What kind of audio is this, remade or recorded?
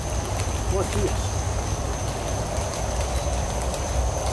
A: recorded